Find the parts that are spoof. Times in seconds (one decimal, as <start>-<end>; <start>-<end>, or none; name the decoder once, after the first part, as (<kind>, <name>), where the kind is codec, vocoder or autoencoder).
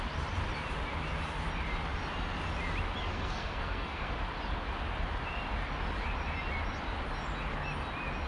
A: 3.1-4.1 (codec, SNAC)